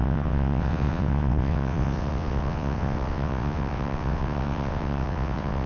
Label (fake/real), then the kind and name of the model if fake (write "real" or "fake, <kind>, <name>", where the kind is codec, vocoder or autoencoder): fake, vocoder, WaveNeXt